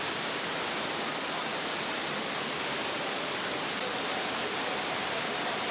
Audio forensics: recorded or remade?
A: recorded